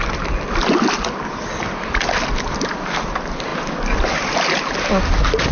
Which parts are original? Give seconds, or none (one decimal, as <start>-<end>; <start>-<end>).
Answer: 0.0-5.5